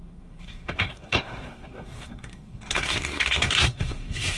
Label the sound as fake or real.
fake